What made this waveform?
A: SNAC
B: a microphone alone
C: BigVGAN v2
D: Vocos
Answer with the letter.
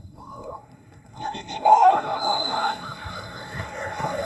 A